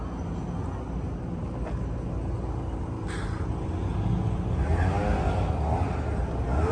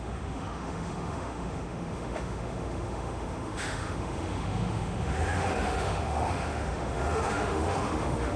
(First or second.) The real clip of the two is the first